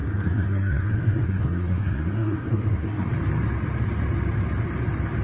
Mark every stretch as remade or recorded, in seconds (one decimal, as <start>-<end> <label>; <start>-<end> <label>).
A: 0.0-3.1 remade; 3.1-5.2 recorded